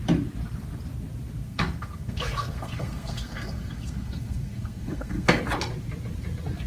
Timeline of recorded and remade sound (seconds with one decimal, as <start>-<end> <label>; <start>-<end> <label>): 0.0-1.4 recorded; 1.4-5.4 remade; 5.4-6.7 recorded